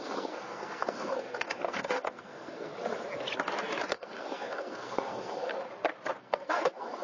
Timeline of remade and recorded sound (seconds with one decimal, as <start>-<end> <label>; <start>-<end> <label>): 0.0-2.7 remade; 2.7-3.9 recorded; 3.9-5.5 remade; 5.5-6.2 recorded; 6.2-7.0 remade